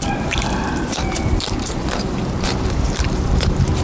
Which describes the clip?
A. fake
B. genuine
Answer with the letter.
A